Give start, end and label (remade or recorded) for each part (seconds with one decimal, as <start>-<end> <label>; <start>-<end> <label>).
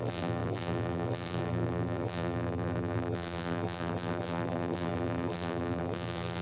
0.0-6.4 remade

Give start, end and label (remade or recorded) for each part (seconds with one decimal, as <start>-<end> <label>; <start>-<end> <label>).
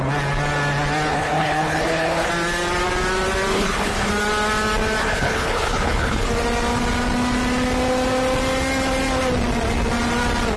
0.0-1.1 recorded; 1.1-2.3 remade; 2.3-3.5 recorded; 3.5-4.1 remade; 4.1-5.0 recorded; 5.0-6.3 remade; 6.3-10.6 recorded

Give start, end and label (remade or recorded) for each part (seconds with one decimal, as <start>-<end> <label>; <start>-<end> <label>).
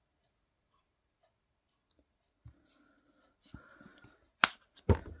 0.0-5.2 recorded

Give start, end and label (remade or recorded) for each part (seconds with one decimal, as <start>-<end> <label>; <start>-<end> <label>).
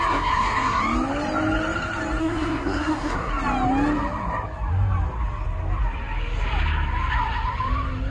0.0-0.8 remade; 0.8-2.2 recorded; 2.2-3.3 remade; 3.3-8.1 recorded